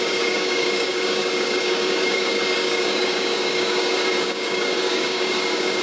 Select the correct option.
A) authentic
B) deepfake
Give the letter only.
B